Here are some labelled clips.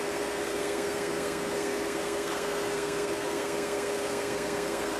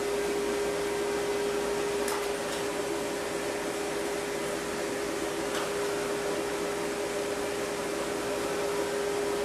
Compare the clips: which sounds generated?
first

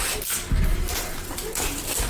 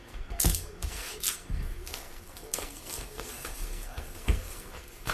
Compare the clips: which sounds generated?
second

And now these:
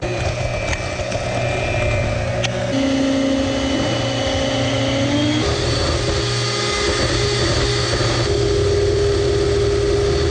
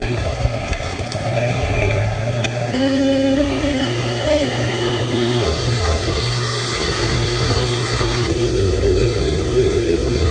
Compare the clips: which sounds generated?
second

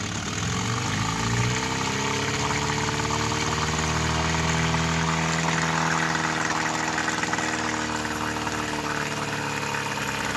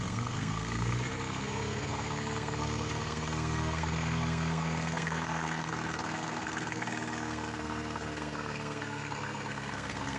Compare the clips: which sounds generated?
second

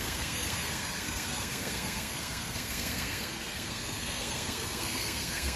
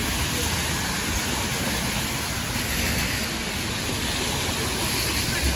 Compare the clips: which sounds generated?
first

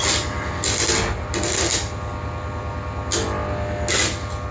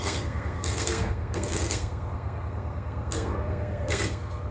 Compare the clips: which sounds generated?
second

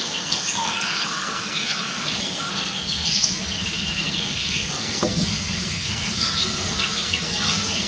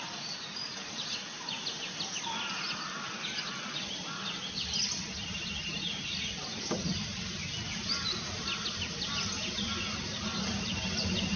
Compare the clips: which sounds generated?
first